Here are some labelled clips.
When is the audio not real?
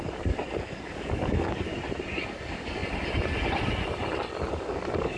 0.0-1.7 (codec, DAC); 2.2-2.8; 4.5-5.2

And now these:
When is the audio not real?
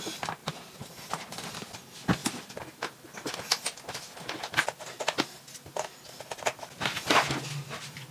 none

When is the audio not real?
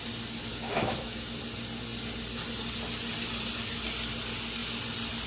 0.5-1.4 (autoencoder, DAC-VAE)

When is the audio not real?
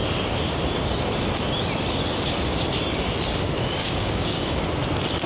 3.8-4.6 (codec, DAC)